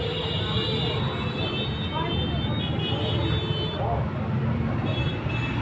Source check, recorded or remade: recorded